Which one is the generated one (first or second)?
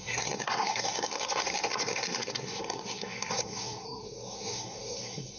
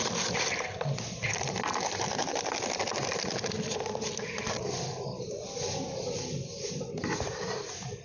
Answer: first